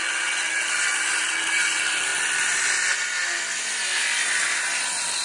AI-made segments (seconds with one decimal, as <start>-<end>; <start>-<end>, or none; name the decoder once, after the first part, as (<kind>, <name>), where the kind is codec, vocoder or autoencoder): none